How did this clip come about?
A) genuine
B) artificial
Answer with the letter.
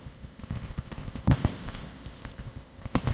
B